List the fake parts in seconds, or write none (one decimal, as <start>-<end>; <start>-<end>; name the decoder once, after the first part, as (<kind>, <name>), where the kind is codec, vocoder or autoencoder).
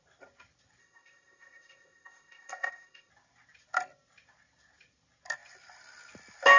0.8-3.1 (codec, ZipCodec)